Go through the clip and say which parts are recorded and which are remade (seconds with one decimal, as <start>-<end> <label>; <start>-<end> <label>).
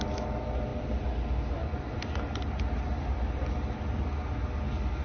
0.0-5.0 recorded